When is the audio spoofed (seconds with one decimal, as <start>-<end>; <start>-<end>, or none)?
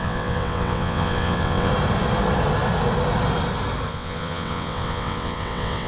0.0-1.7; 3.9-5.9